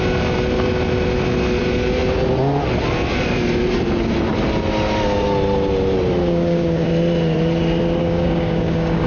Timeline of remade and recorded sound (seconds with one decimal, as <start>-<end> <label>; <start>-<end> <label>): 0.0-6.2 recorded; 6.2-6.9 remade; 6.9-8.0 recorded; 8.0-9.1 remade